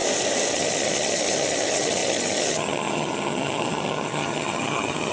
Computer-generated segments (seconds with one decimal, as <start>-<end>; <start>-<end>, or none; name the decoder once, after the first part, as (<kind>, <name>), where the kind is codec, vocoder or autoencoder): 0.5-5.1 (vocoder, HiFi-GAN)